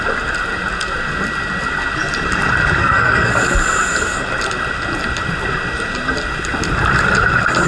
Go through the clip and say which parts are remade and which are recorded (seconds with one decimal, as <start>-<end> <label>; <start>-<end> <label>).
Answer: 0.0-2.8 recorded; 2.8-3.3 remade; 3.3-7.7 recorded